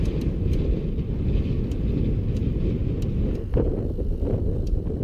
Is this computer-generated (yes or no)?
no